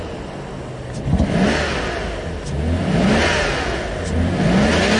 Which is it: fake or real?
real